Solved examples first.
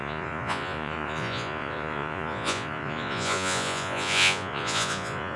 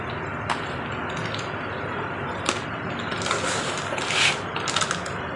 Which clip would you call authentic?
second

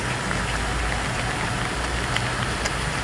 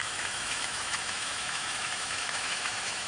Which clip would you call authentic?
first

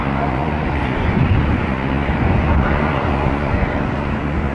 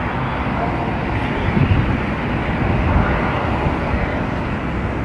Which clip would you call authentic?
second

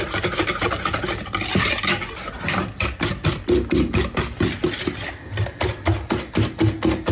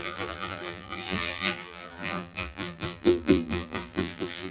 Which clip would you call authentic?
first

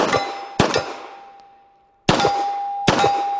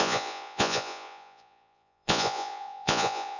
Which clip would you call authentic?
first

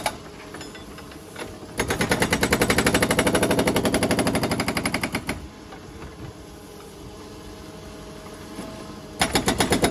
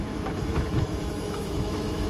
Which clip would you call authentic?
first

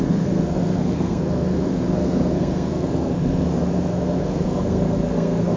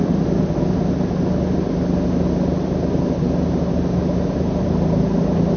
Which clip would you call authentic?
second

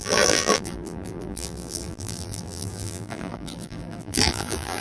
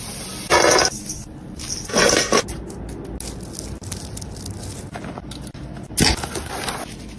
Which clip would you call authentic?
second